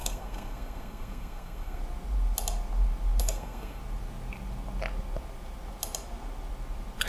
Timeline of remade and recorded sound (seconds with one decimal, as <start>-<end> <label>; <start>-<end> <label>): 0.0-1.8 remade; 1.8-3.2 recorded; 3.2-3.8 remade; 3.8-7.1 recorded